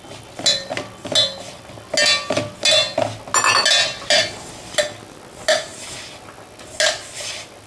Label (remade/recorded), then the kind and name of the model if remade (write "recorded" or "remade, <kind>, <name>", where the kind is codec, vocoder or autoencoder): recorded